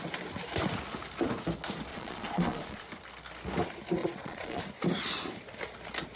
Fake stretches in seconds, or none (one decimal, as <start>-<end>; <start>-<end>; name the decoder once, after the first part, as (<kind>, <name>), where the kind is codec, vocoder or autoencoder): 1.9-2.8 (vocoder, Vocos); 4.0-4.6

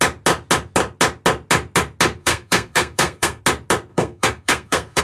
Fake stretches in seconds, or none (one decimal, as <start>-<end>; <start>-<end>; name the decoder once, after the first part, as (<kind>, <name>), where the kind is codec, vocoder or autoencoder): 2.2-3.4 (codec, SNAC); 3.9-5.0

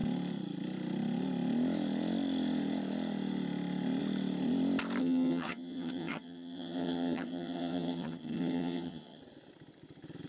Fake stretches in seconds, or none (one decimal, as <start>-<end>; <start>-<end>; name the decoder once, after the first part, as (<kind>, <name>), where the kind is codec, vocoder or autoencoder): 5.0-9.2 (vocoder, HiFi-GAN)

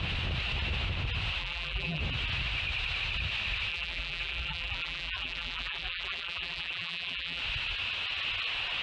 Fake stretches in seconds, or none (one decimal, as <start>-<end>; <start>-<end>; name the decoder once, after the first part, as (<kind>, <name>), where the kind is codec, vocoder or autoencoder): 1.4-2.0 (vocoder, BigVGAN v2); 3.7-7.4

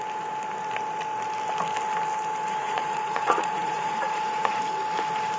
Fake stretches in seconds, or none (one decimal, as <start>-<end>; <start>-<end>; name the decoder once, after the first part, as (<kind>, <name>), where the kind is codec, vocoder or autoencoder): 2.6-4.6 (vocoder, Vocos)

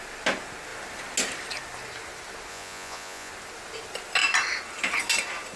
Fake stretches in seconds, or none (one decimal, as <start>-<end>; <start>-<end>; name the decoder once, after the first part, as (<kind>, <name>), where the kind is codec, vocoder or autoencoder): 2.5-3.3 (vocoder, Vocos)